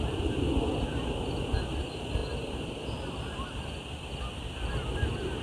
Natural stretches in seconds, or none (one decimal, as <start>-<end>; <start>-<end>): 0.0-5.4